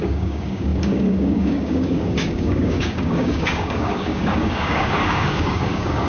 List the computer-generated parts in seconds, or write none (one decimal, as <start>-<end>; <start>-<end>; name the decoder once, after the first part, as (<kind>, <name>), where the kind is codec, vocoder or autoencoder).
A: 0.0-6.1 (codec, DAC)